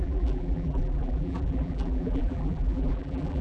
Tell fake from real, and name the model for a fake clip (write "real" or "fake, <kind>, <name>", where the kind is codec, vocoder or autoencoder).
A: fake, vocoder, BigVGAN v2